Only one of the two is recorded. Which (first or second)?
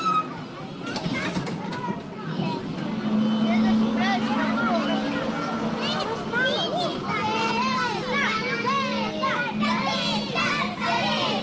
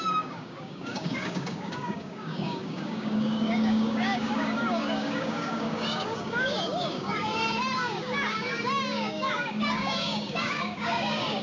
first